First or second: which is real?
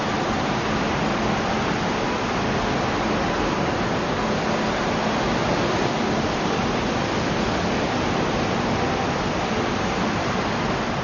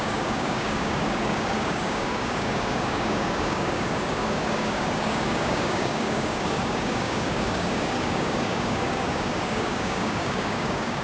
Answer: first